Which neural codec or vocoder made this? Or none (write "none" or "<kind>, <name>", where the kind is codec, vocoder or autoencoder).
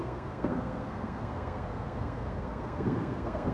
codec, SNAC